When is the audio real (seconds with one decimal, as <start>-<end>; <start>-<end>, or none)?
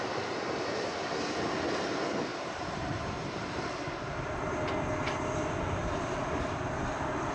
0.0-2.3; 4.3-5.8; 6.6-7.3